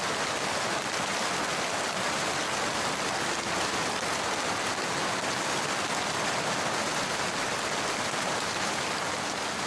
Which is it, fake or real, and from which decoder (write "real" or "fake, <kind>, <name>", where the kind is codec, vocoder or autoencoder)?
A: real